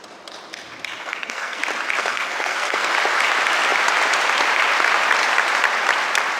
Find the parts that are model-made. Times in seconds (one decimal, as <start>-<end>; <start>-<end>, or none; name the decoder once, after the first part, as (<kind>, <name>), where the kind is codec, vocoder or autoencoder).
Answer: 1.0-1.6 (codec, SNAC); 2.0-2.9